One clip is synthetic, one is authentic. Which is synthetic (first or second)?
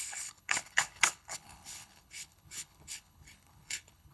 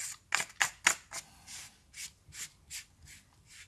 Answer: first